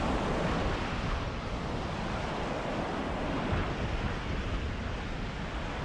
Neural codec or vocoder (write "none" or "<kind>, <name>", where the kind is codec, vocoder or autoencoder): none